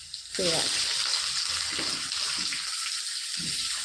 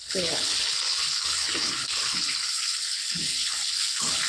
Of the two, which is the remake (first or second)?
second